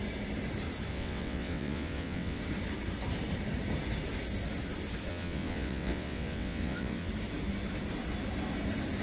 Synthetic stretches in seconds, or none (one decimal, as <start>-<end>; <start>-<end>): 0.9-2.4; 5.1-7.1